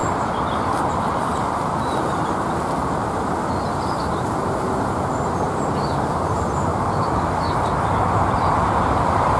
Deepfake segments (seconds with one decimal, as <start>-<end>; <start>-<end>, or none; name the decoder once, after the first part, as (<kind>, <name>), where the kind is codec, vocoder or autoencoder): 0.9-1.3 (vocoder, BigVGAN v2); 4.4-6.7; 8.0-9.4